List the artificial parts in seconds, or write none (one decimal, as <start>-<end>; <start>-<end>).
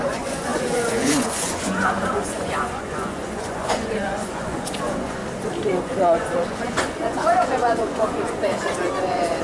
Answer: 0.0-5.2; 5.8-9.4